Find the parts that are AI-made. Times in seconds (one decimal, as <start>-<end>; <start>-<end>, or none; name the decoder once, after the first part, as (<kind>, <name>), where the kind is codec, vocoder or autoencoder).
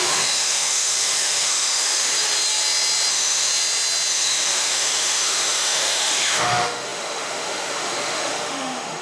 0.0-2.1 (autoencoder, DAC-VAE); 3.1-3.5; 4.1-9.0